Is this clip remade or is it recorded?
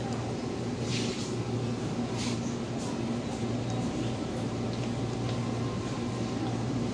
recorded